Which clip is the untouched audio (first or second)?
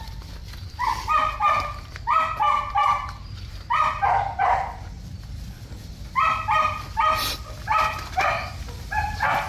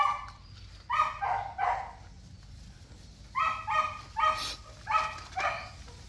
second